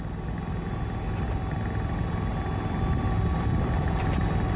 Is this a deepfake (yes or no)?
no